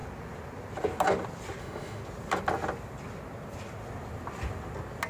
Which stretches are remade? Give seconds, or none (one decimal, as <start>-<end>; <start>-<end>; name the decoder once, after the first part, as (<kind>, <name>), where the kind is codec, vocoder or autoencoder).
1.6-2.0 (autoencoder, DAC-VAE)